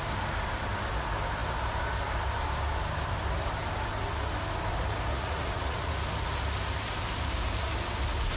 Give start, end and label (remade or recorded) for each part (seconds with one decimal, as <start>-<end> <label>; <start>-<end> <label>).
0.0-5.1 recorded; 5.1-5.9 remade; 5.9-8.4 recorded